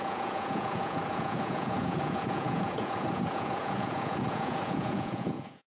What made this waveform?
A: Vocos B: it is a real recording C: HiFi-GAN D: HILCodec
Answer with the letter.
A